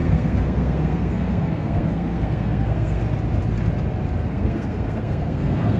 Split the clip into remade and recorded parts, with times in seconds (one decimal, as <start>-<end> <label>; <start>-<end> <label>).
0.0-3.0 remade; 3.0-4.3 recorded; 4.3-5.8 remade